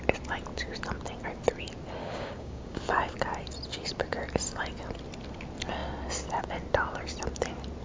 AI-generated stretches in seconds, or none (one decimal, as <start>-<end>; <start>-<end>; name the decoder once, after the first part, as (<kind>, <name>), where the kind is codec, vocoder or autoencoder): 2.0-2.8 (codec, DAC)